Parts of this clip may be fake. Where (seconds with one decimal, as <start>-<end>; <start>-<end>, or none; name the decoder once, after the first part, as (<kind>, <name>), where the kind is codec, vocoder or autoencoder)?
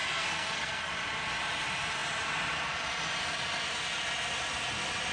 0.0-0.9 (codec, SNAC)